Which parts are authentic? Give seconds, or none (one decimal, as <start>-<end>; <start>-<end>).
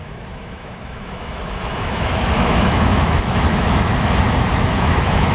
3.9-4.5